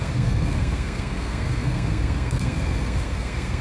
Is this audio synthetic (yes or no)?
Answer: yes